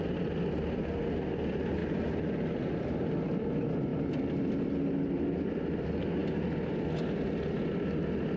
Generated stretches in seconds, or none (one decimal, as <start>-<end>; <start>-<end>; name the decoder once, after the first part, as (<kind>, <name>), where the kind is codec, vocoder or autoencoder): none